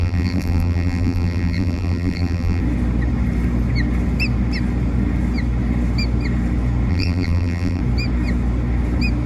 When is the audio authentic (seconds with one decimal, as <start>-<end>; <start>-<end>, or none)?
2.6-6.9; 7.8-9.3